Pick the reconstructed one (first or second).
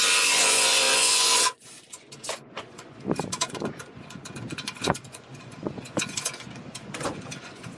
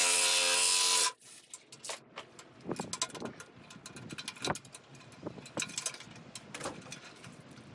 first